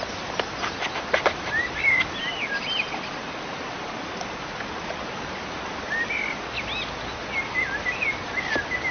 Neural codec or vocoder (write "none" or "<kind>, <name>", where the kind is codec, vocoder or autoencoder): none